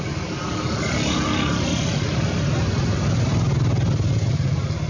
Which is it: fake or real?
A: real